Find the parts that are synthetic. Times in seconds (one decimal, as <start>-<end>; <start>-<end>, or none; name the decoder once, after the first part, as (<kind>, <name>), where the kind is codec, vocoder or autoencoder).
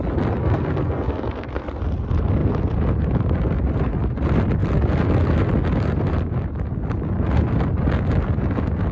0.4-1.8 (codec, SNAC)